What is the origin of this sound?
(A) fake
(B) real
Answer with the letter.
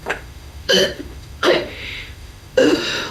A